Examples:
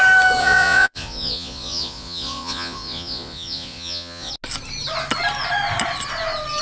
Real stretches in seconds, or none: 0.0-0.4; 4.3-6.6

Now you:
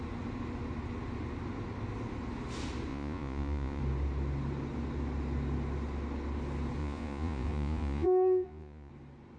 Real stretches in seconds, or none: 0.0-2.9; 3.8-6.8; 8.9-9.4

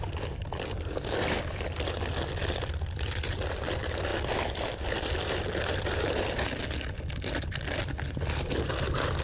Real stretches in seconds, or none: 0.0-9.2